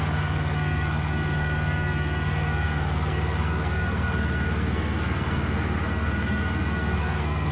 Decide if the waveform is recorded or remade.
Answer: remade